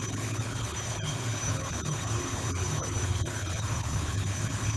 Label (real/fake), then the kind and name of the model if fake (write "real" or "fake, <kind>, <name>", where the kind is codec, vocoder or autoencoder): fake, codec, HILCodec